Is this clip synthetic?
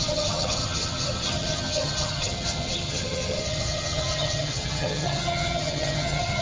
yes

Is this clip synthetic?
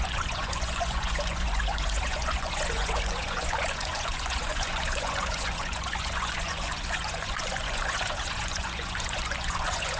yes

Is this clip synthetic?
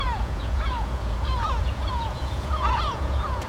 yes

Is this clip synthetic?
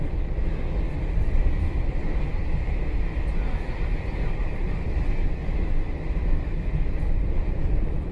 yes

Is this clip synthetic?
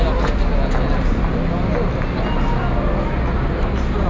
no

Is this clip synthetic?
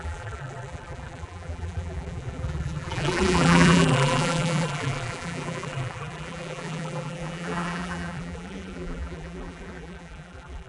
yes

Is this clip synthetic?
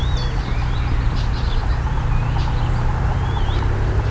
no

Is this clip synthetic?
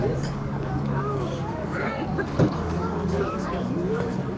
yes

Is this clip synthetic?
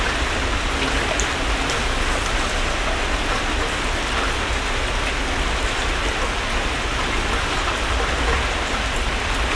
no